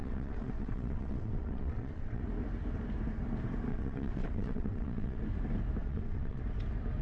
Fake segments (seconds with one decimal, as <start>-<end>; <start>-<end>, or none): 0.0-2.2; 3.7-5.2; 5.8-6.4